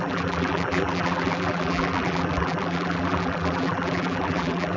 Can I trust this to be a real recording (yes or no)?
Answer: no